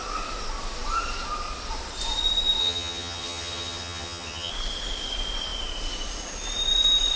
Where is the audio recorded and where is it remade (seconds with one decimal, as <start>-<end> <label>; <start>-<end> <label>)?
0.0-2.6 recorded; 2.6-4.5 remade; 4.5-7.2 recorded